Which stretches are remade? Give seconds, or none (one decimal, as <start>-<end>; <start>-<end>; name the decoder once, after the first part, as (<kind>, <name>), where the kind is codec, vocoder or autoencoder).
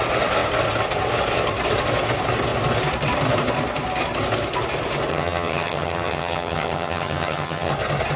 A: 5.1-7.7 (vocoder, HiFi-GAN)